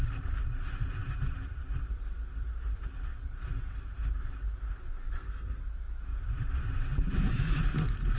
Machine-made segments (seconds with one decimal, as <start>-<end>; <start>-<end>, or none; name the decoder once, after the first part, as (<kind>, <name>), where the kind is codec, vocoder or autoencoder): 5.0-5.6 (codec, SNAC)